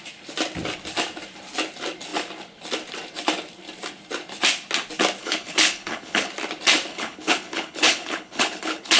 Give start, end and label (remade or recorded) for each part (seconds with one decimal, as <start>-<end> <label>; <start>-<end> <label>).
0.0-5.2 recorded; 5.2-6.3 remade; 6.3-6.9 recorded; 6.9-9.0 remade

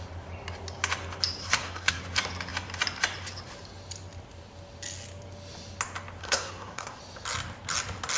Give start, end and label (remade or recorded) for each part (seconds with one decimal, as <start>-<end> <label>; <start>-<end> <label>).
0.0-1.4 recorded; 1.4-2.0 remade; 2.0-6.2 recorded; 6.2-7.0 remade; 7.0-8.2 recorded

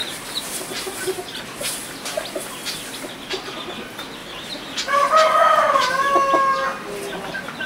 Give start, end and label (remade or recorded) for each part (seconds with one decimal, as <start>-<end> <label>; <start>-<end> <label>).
0.0-4.2 recorded; 4.2-5.1 remade; 5.1-7.7 recorded